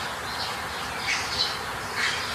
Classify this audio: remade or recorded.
recorded